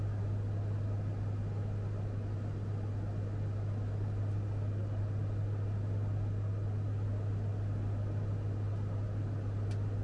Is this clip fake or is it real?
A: real